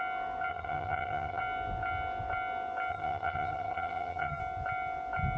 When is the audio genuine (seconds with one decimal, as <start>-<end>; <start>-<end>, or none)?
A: 0.0-0.5; 1.4-2.9; 4.4-5.4